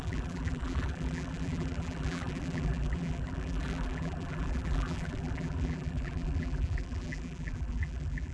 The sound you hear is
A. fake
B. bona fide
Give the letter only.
A